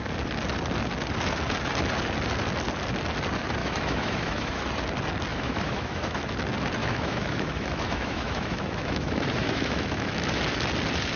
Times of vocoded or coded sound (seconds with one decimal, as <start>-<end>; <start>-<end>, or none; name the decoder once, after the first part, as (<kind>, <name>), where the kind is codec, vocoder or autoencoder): 3.6-4.6 (autoencoder, DAC-VAE); 5.3-6.2; 6.8-10.4